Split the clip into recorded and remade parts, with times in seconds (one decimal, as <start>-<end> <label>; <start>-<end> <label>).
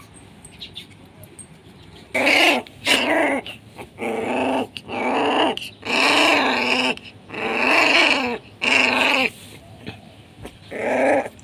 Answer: 0.0-7.5 remade; 7.5-10.1 recorded; 10.1-11.4 remade